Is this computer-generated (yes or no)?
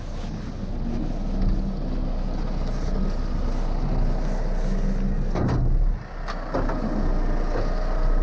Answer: no